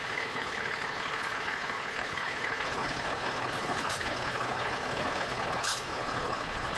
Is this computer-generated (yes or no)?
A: yes